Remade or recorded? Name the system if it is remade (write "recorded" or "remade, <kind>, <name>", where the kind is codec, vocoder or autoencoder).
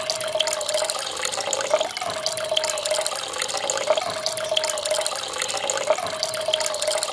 recorded